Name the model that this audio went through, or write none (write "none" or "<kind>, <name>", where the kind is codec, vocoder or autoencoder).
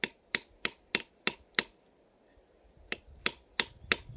none